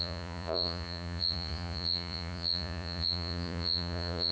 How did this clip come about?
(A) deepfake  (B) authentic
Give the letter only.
A